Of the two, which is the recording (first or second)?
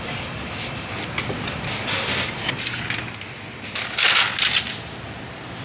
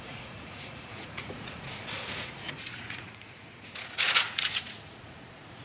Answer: first